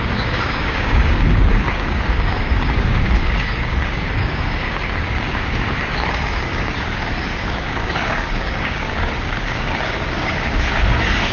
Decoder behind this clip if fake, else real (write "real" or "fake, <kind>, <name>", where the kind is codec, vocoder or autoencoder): fake, codec, DAC